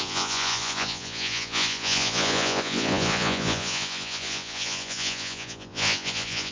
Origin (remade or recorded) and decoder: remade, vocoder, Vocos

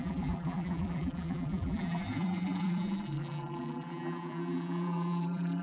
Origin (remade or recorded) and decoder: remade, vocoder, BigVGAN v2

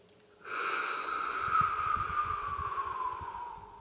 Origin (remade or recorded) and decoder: remade, vocoder, Vocos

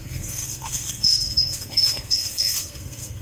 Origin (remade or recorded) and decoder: remade, codec, SNAC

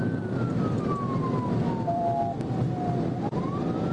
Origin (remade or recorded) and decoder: recorded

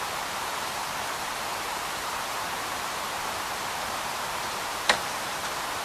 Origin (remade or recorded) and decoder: remade, vocoder, BigVGAN v2